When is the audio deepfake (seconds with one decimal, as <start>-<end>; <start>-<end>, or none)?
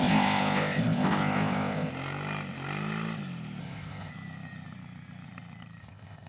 0.0-1.9; 3.6-4.1; 5.8-6.3